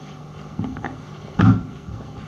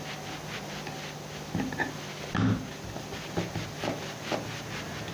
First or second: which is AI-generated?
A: first